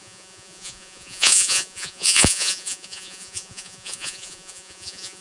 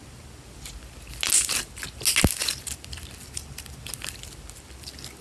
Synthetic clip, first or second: first